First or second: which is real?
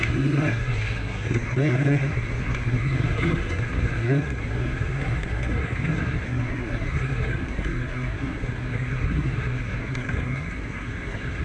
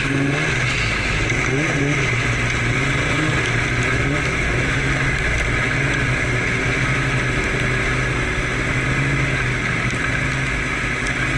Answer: second